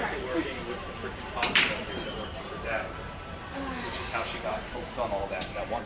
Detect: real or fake fake